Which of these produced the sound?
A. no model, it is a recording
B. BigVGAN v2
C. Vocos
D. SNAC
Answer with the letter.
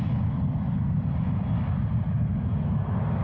A